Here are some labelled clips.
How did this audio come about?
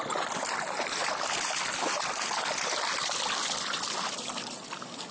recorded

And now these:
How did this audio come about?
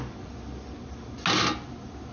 recorded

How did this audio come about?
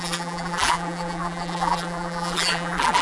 remade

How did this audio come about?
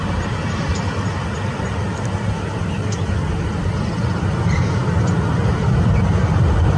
recorded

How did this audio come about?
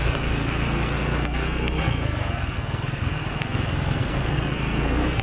remade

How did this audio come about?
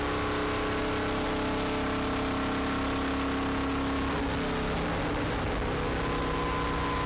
recorded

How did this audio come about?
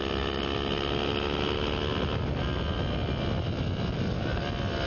recorded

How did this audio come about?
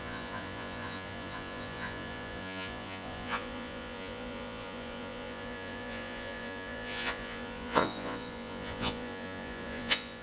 remade